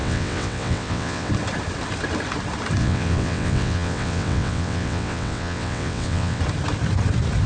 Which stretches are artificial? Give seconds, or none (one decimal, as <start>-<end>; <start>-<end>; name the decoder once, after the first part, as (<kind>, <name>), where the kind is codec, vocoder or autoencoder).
0.0-1.3 (vocoder, WaveNeXt); 2.8-6.4